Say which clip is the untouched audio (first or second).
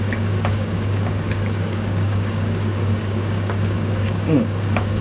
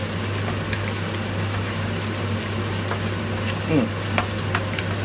second